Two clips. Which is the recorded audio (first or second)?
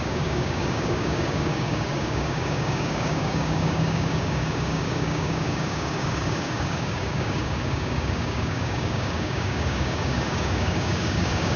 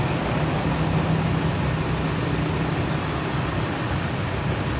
second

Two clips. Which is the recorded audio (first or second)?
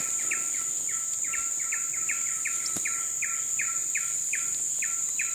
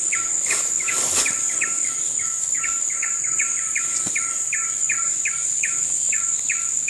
first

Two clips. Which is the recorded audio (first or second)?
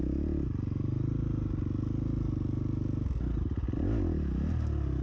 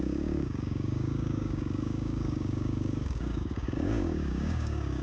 first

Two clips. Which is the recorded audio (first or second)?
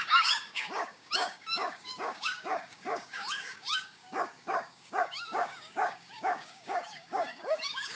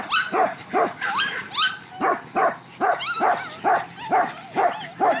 second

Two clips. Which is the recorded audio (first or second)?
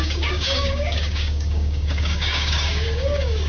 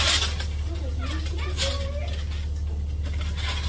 second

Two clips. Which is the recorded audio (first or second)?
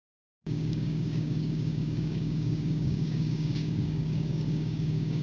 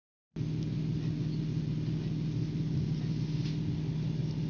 second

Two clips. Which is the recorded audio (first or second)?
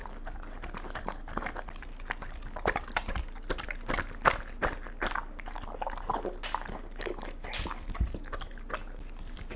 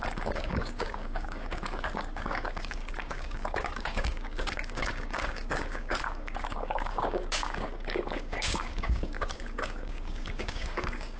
first